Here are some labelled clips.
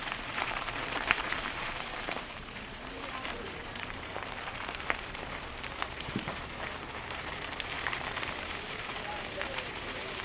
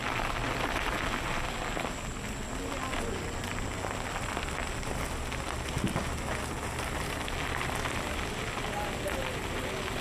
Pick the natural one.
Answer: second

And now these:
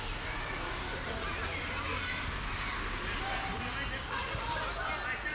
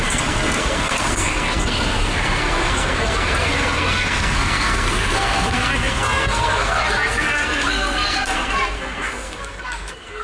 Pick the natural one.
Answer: first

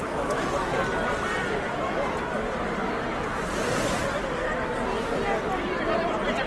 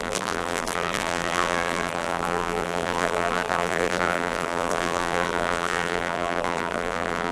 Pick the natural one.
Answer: first